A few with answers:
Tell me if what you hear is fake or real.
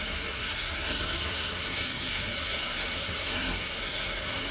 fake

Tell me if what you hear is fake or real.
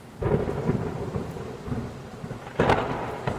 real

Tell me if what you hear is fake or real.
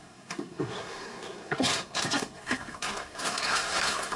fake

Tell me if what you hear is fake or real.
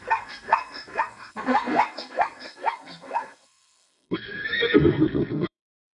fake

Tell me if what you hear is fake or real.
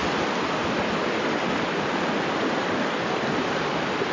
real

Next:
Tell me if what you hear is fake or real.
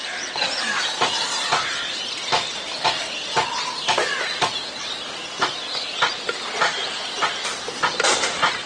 fake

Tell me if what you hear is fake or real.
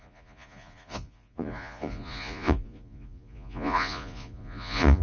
fake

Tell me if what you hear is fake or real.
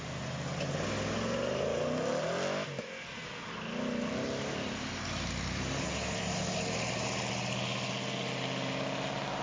real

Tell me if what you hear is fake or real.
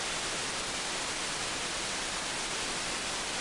real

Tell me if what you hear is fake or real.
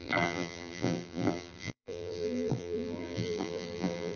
fake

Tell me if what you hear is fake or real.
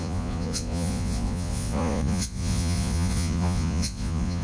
fake